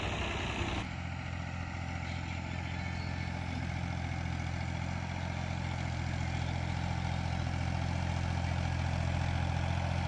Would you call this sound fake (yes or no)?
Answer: no